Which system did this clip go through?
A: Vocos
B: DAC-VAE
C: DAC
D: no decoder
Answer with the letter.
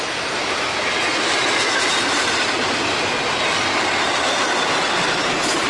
D